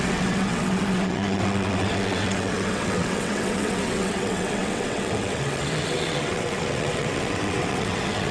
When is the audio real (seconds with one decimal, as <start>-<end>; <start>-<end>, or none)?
none